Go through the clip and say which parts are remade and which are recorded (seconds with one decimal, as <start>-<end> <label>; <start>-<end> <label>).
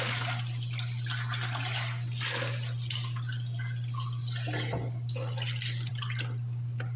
0.0-7.0 recorded